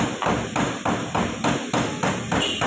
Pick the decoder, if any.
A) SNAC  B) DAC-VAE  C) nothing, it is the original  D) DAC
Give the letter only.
C